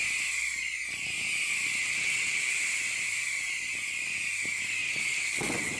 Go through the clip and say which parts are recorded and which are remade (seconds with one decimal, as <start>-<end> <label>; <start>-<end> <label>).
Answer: 0.0-1.8 recorded; 1.8-2.6 remade; 2.6-4.8 recorded; 4.8-5.8 remade